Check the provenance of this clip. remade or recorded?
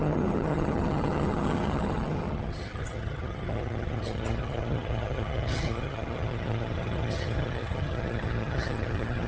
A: remade